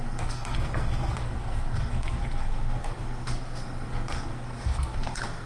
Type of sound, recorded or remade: remade